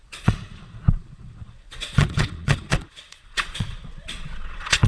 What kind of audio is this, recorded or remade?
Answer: remade